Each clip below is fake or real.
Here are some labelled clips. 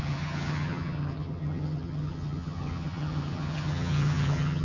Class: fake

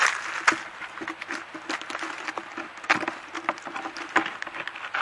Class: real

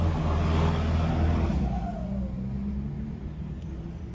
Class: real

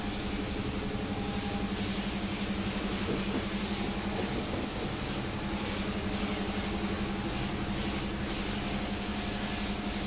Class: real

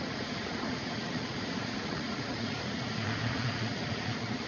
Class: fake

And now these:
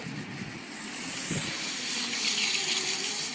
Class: real